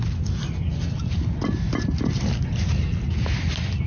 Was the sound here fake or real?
real